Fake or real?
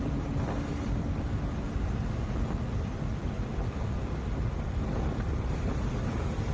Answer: fake